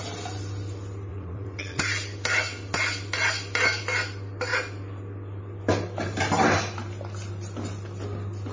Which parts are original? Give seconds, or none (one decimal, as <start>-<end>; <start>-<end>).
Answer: 0.0-1.1; 1.8-8.5

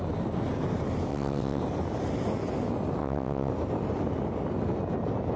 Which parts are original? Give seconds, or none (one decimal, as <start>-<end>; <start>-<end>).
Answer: 0.0-1.1; 1.6-3.0; 3.5-5.4

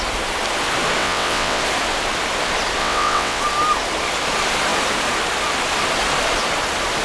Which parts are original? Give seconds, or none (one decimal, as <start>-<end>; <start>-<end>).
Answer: 0.0-1.0; 1.6-2.8; 3.4-7.0

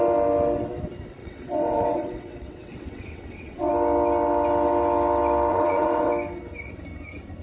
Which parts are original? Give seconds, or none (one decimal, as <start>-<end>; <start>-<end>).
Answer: 0.0-1.2; 3.7-5.5; 6.1-7.4

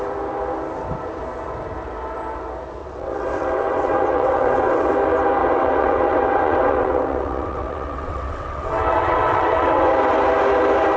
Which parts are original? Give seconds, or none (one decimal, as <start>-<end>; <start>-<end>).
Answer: 0.0-2.8; 4.9-5.4; 9.9-11.0

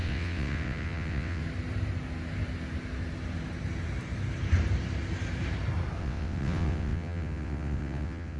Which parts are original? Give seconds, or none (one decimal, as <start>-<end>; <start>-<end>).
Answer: 1.4-6.0

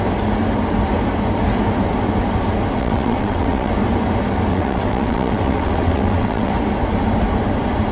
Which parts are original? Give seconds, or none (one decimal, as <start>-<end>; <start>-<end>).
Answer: 0.0-2.8; 3.7-4.5; 6.5-7.9